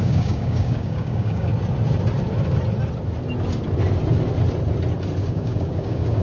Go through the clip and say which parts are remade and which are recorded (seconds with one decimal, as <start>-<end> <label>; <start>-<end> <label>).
0.0-1.5 remade; 1.5-5.2 recorded; 5.2-6.2 remade